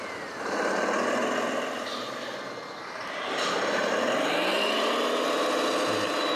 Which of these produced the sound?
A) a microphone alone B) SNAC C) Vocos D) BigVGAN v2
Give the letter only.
A